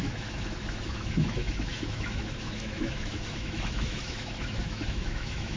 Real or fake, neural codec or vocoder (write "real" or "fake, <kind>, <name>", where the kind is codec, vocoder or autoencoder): fake, autoencoder, DAC-VAE